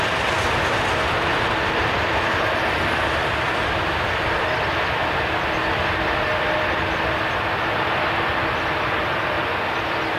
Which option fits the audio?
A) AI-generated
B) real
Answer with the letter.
B